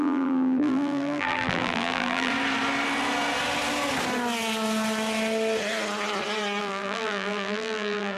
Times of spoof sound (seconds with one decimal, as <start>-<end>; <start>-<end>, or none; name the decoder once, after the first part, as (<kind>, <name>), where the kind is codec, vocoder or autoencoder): 0.0-2.3 (vocoder, BigVGAN v2); 6.6-8.2

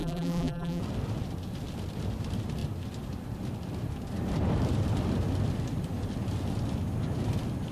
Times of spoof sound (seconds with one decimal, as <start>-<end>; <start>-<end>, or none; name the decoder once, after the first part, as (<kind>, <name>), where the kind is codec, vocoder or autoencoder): 0.0-0.8 (vocoder, BigVGAN v2)

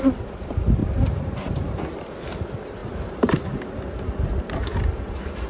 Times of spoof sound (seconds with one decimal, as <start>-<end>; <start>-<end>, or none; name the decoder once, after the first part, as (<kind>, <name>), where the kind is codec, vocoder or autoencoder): 0.8-1.8 (vocoder, BigVGAN v2); 2.8-3.4

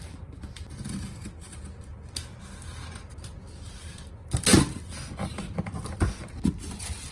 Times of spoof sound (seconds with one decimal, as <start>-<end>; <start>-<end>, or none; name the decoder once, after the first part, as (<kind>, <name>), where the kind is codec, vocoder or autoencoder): 0.0-1.9 (vocoder, BigVGAN v2); 3.5-4.5; 5.1-7.1

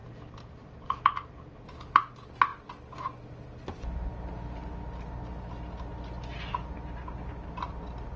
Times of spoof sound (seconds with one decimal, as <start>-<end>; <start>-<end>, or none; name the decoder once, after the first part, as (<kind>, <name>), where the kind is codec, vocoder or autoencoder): 0.0-1.3 (vocoder, BigVGAN v2)

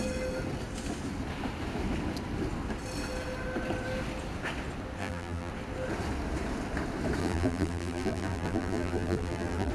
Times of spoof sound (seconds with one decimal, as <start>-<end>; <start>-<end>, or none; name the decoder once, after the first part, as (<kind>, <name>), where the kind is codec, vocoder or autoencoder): 5.0-5.5 (vocoder, BigVGAN v2); 7.2-9.7